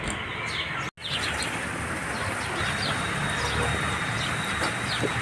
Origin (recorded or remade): recorded